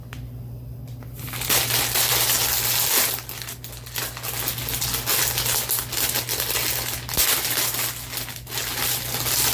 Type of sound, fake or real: real